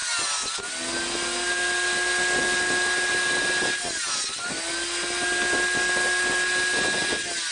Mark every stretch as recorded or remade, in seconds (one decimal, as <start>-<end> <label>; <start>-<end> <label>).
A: 0.0-7.5 recorded